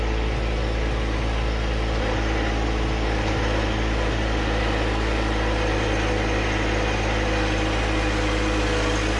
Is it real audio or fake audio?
real